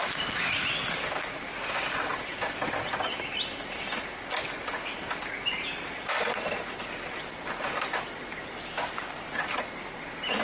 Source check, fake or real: real